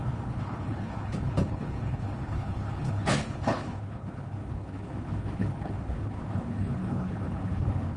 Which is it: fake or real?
fake